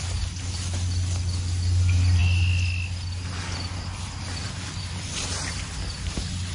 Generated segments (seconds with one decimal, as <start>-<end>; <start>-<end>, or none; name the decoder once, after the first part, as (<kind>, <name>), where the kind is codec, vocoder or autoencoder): none